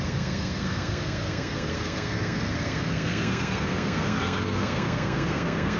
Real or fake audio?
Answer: fake